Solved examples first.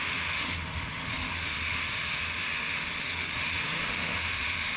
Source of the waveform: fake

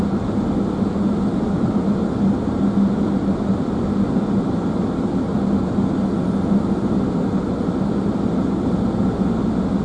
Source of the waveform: real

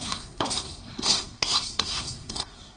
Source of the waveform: fake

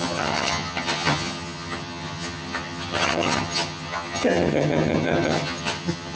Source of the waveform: fake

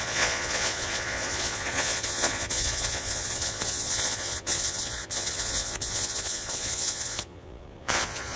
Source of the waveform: fake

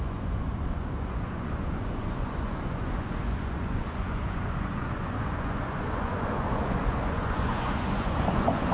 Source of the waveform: fake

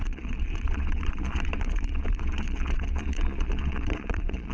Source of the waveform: fake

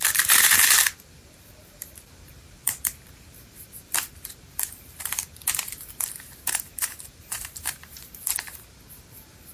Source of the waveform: fake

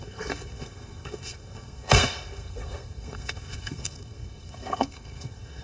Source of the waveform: fake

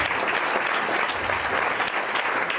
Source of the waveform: real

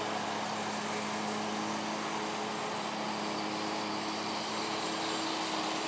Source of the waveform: real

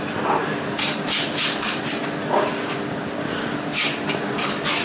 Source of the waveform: fake